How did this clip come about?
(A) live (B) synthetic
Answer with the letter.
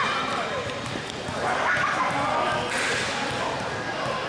A